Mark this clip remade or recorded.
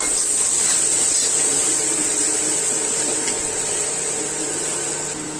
recorded